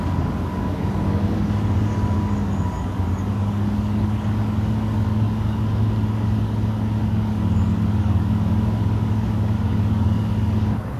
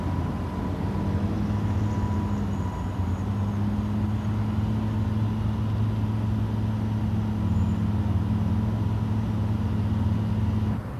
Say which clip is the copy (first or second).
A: first